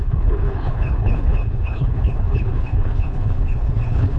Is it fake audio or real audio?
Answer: fake